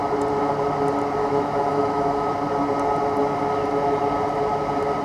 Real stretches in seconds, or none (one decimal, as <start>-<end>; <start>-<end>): 0.0-1.2; 2.3-5.0